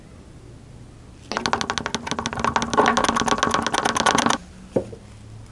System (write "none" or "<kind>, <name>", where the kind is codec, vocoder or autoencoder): none